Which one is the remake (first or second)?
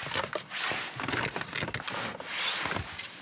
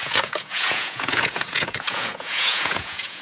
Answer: second